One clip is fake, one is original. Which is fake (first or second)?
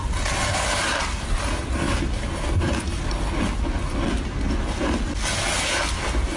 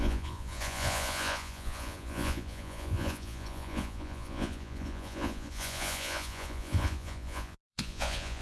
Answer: second